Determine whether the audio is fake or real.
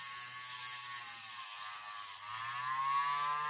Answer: real